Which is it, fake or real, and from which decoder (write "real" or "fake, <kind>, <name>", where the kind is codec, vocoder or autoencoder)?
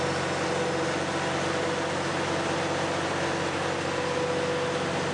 real